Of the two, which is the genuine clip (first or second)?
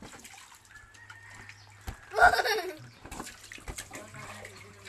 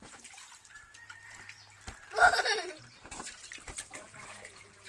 first